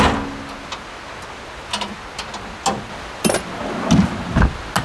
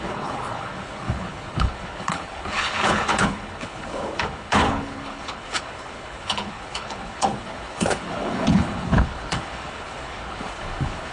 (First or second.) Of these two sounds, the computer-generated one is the second